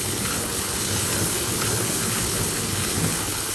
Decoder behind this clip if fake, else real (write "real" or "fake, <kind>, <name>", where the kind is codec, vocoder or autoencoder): fake, codec, HILCodec